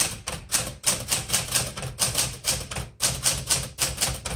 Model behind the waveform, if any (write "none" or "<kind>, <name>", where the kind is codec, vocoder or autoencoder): none